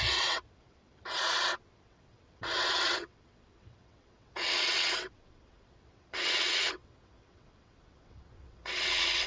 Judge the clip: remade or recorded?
remade